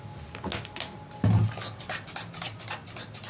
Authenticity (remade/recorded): recorded